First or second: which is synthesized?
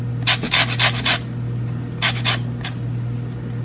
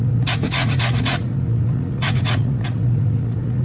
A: second